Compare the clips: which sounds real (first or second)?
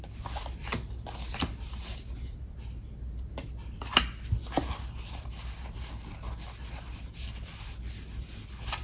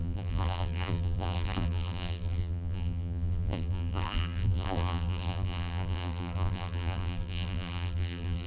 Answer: first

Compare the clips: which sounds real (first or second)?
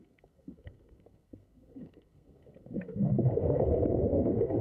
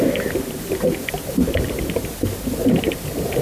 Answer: second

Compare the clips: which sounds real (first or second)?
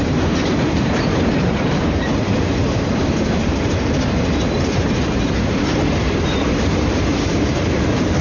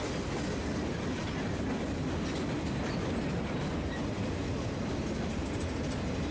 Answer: second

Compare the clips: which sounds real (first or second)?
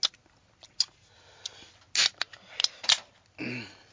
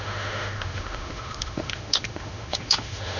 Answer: first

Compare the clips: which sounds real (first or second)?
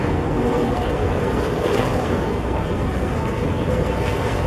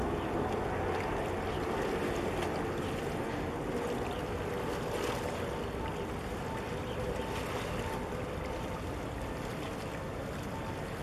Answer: second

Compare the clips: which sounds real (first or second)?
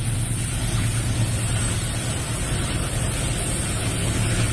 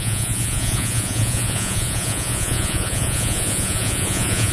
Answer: first